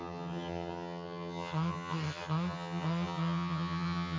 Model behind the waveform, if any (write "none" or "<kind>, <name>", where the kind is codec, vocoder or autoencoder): vocoder, HiFi-GAN